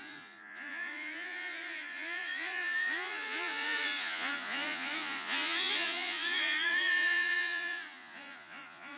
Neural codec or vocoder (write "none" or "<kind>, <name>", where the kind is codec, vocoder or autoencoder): vocoder, Vocos